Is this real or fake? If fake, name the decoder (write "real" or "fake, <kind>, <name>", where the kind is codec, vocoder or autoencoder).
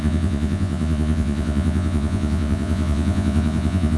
fake, vocoder, Vocos